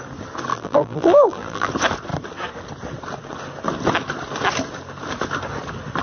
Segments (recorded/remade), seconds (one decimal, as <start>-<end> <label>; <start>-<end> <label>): 0.0-0.5 recorded; 0.5-1.7 remade; 1.7-6.0 recorded